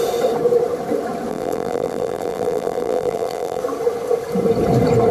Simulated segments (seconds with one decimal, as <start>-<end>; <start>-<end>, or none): 1.3-3.6